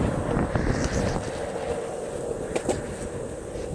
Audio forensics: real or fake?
real